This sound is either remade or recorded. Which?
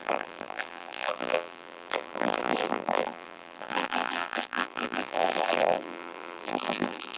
remade